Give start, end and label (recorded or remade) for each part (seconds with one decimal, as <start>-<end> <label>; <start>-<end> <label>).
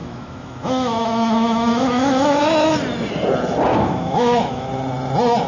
0.0-2.4 remade; 2.4-3.7 recorded; 3.7-4.7 remade; 4.7-5.5 recorded